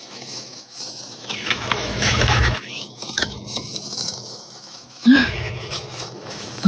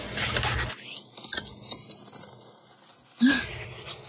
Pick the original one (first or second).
second